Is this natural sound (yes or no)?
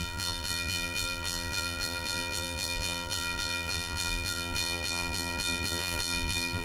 no